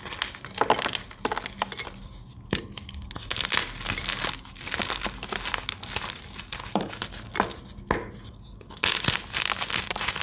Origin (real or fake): real